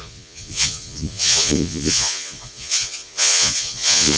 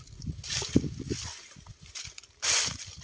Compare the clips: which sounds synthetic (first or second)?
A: first